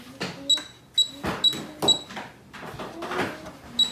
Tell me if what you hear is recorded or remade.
recorded